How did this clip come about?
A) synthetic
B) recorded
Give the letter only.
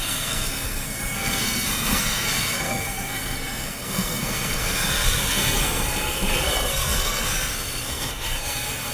A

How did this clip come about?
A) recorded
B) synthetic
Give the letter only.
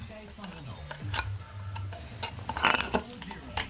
A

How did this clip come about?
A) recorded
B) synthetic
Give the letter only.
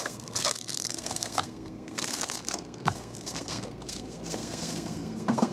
B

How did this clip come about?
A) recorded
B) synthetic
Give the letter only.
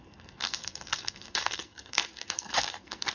B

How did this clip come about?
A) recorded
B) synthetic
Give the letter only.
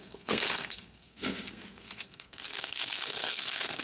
B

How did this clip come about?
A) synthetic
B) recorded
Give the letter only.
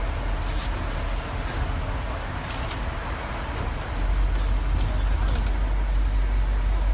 B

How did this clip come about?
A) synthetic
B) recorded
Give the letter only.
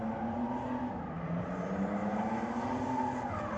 B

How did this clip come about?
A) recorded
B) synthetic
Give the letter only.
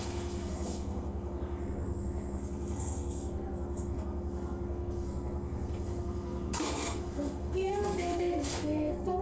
B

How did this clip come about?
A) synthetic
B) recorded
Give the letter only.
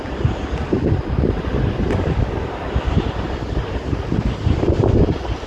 B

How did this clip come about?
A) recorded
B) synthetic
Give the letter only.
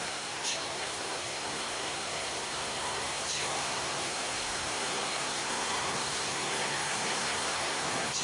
B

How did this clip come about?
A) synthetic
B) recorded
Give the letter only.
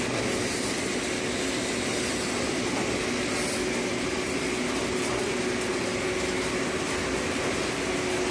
B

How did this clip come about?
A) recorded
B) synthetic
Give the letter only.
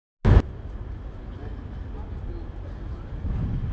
A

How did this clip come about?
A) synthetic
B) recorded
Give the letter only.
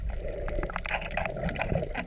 B